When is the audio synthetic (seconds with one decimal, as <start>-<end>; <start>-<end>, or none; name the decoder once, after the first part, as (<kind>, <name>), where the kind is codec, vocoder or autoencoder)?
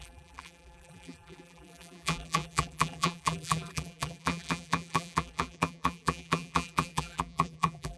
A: 0.0-8.0 (vocoder, BigVGAN v2)